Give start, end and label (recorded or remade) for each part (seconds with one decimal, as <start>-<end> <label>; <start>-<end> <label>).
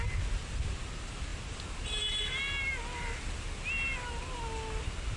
0.0-5.2 recorded